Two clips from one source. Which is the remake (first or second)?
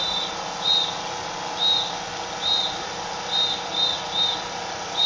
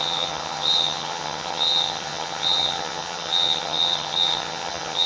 second